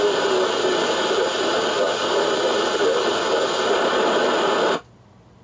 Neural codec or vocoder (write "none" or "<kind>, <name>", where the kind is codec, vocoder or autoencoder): none